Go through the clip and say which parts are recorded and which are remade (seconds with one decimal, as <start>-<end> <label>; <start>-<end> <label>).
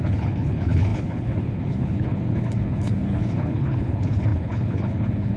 0.0-5.4 remade